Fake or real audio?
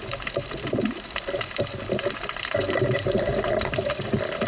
fake